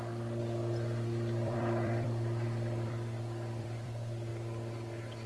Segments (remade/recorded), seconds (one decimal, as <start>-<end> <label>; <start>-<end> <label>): 0.0-4.3 remade; 4.3-5.3 recorded